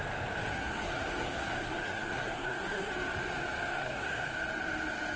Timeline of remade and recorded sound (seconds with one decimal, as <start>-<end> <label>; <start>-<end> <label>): 0.0-0.5 recorded; 0.5-2.9 remade; 2.9-3.7 recorded; 3.7-4.3 remade; 4.3-5.2 recorded